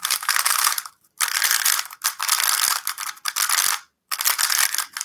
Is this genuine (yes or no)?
yes